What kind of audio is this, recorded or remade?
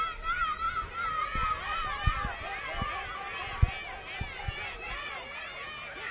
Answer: recorded